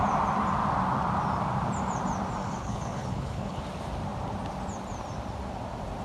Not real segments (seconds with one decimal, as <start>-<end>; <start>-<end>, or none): 2.4-3.6